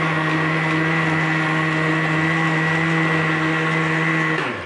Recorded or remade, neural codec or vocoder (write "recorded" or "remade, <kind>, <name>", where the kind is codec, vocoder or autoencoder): recorded